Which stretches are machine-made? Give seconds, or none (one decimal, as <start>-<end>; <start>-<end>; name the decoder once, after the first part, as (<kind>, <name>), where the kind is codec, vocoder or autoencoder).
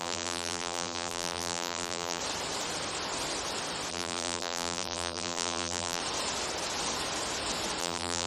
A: 0.0-2.2 (vocoder, BigVGAN v2); 3.9-6.0; 7.8-8.3